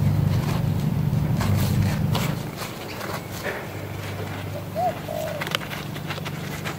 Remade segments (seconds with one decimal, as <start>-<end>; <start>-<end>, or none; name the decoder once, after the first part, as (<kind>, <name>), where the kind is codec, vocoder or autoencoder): 0.0-6.8 (vocoder, BigVGAN v2)